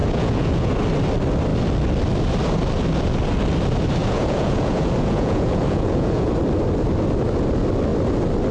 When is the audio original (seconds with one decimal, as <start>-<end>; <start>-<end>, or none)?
0.7-4.0; 6.3-8.5